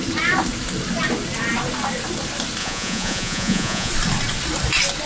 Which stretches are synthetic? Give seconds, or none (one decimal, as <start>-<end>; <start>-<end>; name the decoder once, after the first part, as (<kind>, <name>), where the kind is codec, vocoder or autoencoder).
2.6-3.9 (vocoder, Vocos)